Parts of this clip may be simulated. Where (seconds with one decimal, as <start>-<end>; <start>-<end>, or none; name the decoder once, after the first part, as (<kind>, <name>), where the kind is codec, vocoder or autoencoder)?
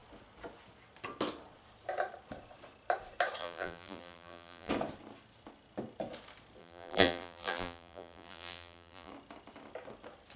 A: 3.4-4.7 (vocoder, BigVGAN v2); 6.6-9.1